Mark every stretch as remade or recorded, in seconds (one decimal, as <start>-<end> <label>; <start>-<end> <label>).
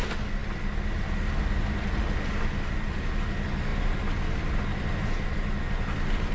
0.0-6.3 recorded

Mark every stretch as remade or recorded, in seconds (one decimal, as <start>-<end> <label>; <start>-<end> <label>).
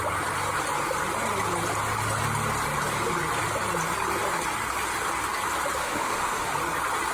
0.0-5.8 recorded; 5.8-6.5 remade; 6.5-7.1 recorded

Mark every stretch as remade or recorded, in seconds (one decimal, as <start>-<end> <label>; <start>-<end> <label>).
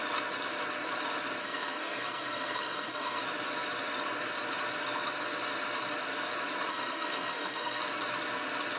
0.0-1.4 recorded; 1.4-3.2 remade; 3.2-6.7 recorded; 6.7-7.8 remade; 7.8-8.8 recorded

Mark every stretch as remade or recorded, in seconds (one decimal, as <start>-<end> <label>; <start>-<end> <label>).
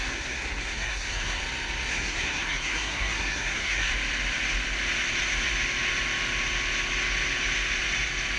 0.0-1.4 remade; 1.4-1.9 recorded; 1.9-3.9 remade; 3.9-8.4 recorded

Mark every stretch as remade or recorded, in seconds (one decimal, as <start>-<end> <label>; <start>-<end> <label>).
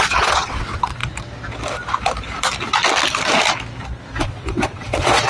0.0-1.0 remade; 1.0-4.2 recorded; 4.2-5.3 remade